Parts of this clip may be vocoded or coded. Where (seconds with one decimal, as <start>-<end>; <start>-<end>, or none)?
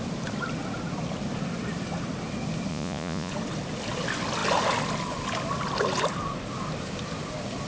2.7-3.3